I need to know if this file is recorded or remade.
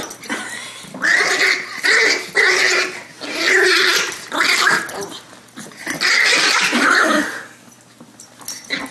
recorded